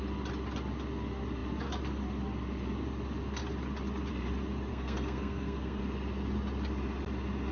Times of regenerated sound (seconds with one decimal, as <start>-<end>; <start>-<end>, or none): 4.7-5.8

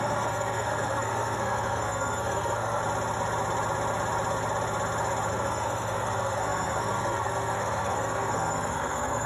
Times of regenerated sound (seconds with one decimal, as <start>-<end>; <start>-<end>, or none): 0.0-2.8; 5.3-9.3

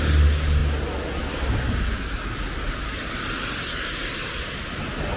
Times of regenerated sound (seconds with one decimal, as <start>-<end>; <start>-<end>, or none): none

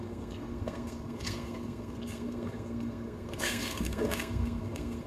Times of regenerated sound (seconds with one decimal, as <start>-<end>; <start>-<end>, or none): 0.0-5.1

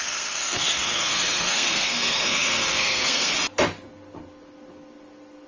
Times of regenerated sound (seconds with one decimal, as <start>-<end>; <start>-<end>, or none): 0.0-3.3

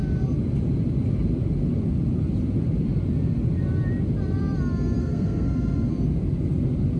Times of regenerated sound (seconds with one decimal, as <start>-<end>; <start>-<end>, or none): 5.0-5.9